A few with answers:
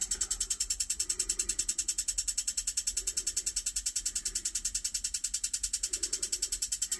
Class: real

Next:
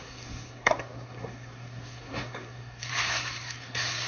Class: fake